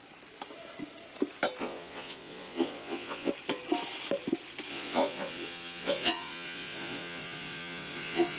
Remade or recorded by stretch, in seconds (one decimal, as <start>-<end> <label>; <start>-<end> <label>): 0.0-1.6 recorded; 1.6-3.3 remade; 3.3-4.7 recorded; 4.7-8.4 remade